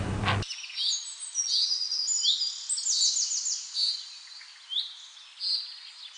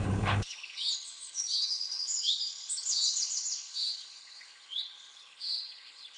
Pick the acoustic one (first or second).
first